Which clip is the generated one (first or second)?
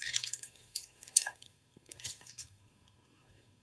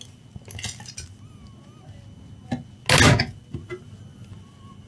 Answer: first